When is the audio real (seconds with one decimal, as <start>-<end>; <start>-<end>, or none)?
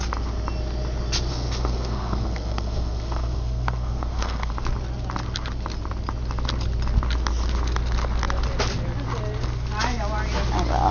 0.0-1.3; 4.5-10.9